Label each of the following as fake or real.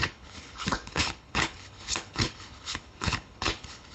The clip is fake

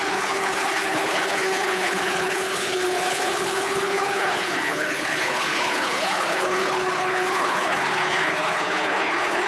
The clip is fake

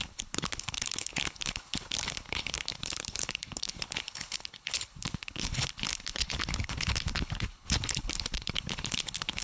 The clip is fake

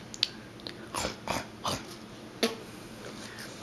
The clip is real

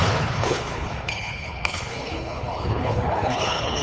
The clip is fake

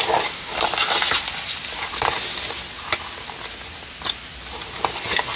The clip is real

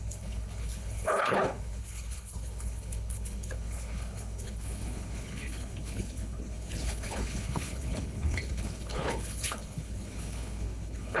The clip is fake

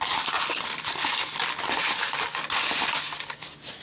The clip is real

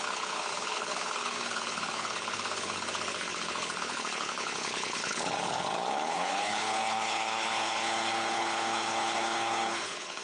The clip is fake